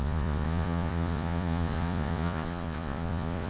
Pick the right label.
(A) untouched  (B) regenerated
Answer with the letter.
B